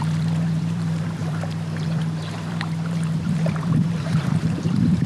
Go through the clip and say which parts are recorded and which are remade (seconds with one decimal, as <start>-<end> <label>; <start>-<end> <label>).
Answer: 0.0-5.1 remade